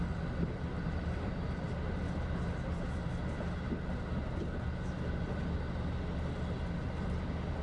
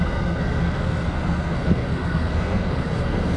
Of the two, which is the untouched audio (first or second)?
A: first